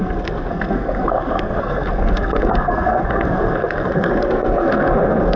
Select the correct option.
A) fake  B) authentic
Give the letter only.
A